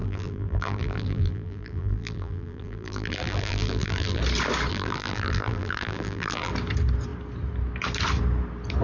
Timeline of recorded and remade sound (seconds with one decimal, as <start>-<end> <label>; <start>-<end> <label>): 0.0-4.2 remade; 4.2-4.7 recorded; 4.7-6.5 remade; 6.5-8.8 recorded